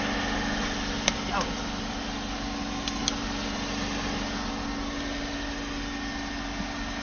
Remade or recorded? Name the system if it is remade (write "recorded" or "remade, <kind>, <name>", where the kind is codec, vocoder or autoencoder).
recorded